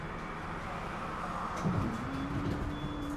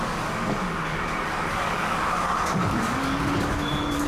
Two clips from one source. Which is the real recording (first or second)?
first